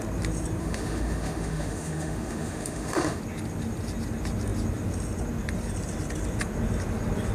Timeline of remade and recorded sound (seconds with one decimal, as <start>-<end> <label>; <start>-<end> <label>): 0.0-0.6 recorded; 0.6-3.2 remade; 3.2-7.3 recorded